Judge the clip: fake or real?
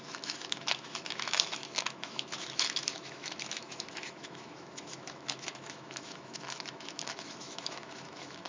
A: fake